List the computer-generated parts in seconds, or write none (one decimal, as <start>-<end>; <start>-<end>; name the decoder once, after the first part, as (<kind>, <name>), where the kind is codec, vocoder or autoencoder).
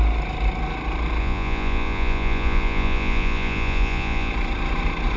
1.2-4.3 (vocoder, Vocos)